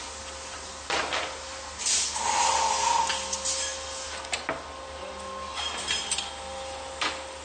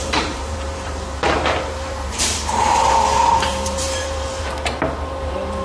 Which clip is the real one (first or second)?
first